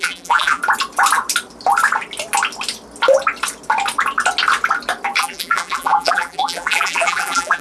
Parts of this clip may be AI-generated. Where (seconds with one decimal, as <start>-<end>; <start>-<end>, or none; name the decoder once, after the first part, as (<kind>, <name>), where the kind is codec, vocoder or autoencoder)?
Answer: 0.0-0.6 (vocoder, BigVGAN v2); 5.2-7.6